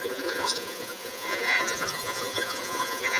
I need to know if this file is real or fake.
fake